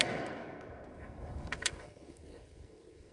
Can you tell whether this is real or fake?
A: fake